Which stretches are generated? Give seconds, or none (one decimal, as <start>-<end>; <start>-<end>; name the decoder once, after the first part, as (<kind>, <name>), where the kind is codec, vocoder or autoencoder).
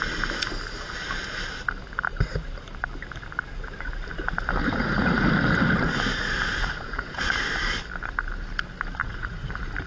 4.6-5.3 (vocoder, Vocos); 6.6-7.5; 9.0-9.5